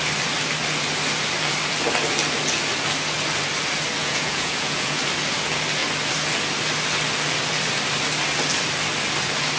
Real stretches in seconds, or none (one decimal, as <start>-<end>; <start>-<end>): 0.0-4.0; 5.0-9.6